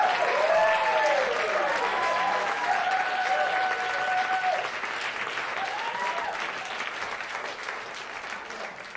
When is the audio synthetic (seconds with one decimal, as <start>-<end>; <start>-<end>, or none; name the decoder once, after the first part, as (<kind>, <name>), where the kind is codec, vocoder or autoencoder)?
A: 1.9-2.7 (autoencoder, DAC-VAE)